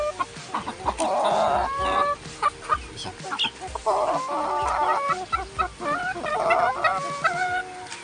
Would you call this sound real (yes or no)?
yes